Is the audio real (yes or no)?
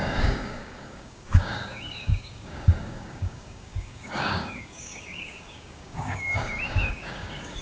no